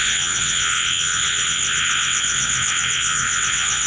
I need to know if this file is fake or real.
fake